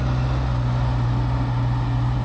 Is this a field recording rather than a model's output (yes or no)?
yes